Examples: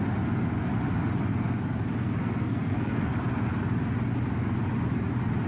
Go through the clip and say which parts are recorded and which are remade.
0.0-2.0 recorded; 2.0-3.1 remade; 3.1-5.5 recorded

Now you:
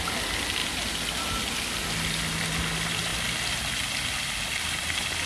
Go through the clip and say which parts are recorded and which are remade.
0.0-5.3 recorded

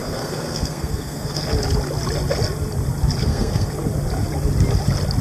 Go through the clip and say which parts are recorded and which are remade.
0.0-1.4 remade; 1.4-3.2 recorded; 3.2-3.7 remade; 3.7-5.2 recorded

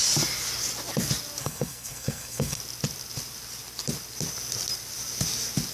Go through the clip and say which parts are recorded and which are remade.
0.0-1.4 recorded; 1.4-2.6 remade; 2.6-5.7 recorded

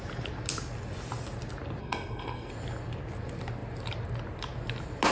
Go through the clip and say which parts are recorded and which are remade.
0.0-1.8 recorded; 1.8-2.5 remade; 2.5-5.1 recorded